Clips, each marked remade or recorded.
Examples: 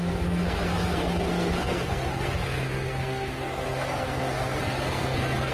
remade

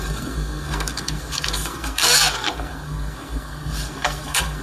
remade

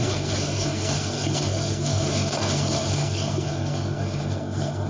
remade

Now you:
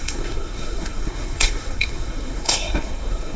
remade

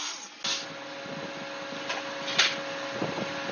recorded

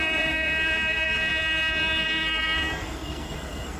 remade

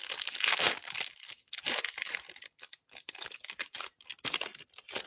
recorded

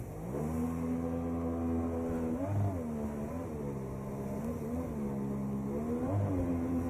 recorded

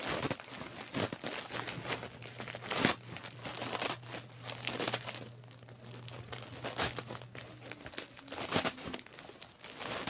recorded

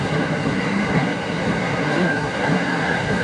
remade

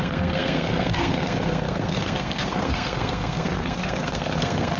remade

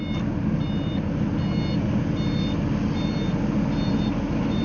recorded